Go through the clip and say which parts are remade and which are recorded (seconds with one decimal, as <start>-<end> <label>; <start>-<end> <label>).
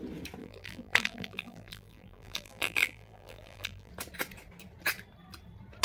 0.0-0.4 recorded; 0.4-3.9 remade; 3.9-5.8 recorded